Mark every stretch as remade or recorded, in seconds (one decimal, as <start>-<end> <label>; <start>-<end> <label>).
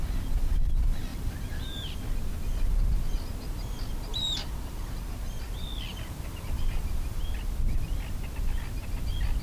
0.0-1.1 recorded; 1.1-1.9 remade; 1.9-4.1 recorded; 4.1-4.8 remade; 4.8-5.9 recorded; 5.9-7.2 remade; 7.2-9.4 recorded